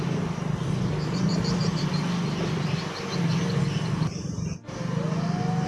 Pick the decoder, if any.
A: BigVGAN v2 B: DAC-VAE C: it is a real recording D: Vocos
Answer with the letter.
C